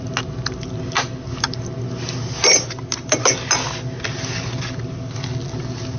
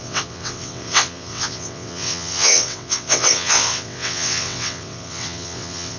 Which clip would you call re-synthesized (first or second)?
second